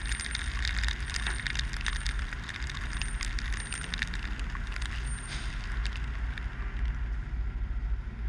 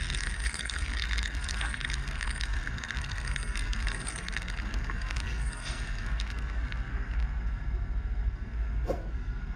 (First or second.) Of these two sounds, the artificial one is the second